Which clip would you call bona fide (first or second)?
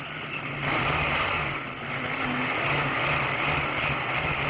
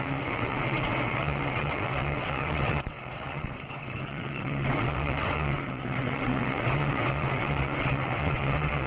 first